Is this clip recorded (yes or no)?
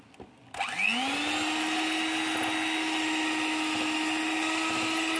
yes